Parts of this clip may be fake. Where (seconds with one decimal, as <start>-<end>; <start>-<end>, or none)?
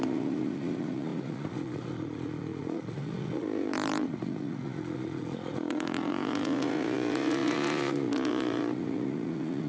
0.0-9.7